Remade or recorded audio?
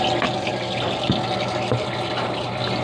recorded